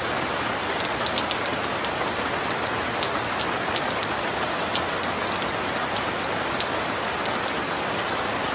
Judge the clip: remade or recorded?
recorded